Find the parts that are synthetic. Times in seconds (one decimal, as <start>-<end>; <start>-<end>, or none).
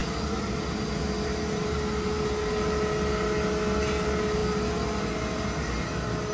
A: none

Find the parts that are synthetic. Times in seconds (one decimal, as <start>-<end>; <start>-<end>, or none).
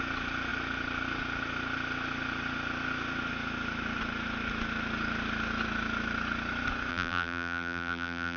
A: 6.9-8.4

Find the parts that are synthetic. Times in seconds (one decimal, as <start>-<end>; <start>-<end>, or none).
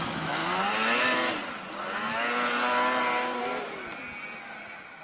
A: none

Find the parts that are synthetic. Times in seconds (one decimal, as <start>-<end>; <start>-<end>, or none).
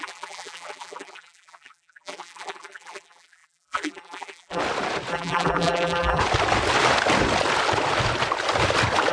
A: 0.0-4.6; 5.1-6.2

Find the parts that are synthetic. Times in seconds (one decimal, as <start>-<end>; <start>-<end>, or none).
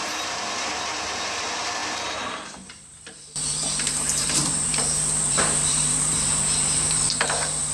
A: 0.0-7.7